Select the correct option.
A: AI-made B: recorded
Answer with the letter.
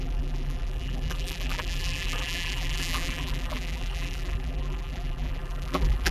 A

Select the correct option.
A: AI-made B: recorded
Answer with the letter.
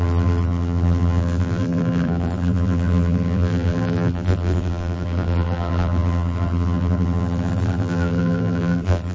A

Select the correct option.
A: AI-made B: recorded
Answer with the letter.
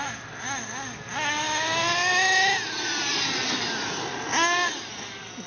B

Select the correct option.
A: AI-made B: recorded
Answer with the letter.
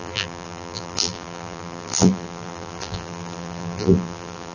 A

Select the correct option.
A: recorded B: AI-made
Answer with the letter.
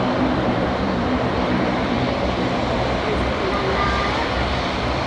B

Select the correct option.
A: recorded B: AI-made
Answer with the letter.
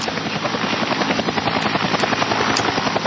A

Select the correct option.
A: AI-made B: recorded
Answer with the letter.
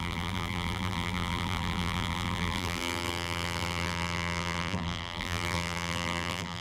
A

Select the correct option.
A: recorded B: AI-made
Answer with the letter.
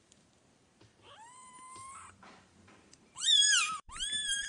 B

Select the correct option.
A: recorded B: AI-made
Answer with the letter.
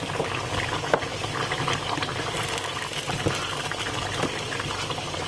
A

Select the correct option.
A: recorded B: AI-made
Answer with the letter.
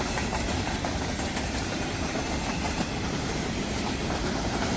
B